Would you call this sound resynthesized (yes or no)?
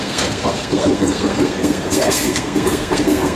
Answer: yes